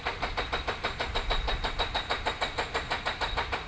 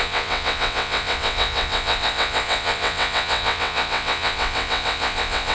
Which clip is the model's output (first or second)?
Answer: second